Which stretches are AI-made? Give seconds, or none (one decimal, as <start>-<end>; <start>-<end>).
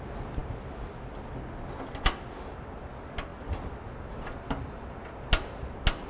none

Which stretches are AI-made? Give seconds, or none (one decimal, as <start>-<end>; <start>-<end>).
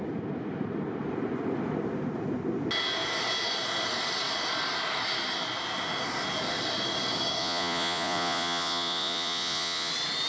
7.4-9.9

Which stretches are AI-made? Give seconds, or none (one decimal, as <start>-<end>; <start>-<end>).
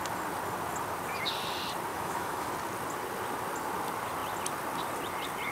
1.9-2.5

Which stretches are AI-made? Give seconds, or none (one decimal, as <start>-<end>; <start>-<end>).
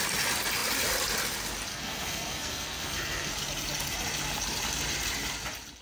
1.7-3.3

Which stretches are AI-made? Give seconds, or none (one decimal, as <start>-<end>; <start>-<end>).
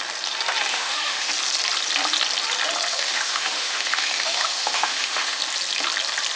0.7-1.3; 2.9-5.4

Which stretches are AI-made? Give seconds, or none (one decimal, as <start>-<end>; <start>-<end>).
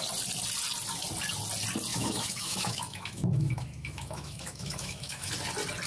1.9-5.3